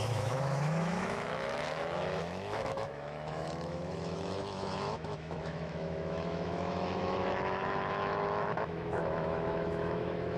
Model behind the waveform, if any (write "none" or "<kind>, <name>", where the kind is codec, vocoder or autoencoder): autoencoder, DAC-VAE